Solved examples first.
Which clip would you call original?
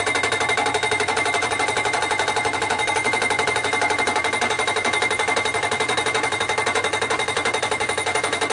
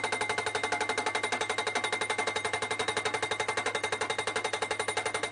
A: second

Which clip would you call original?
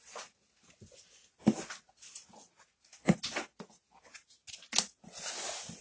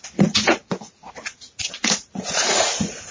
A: first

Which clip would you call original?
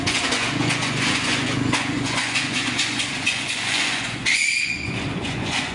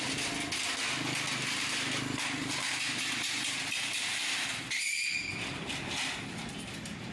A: second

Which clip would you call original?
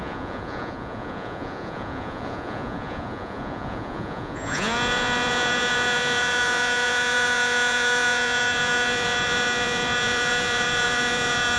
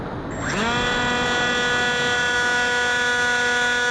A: second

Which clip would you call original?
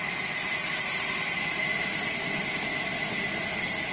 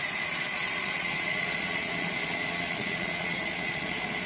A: first